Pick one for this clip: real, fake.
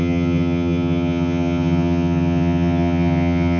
fake